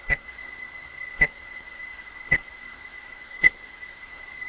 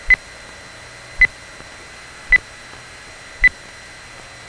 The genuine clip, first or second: second